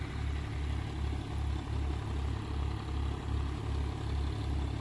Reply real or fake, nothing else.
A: real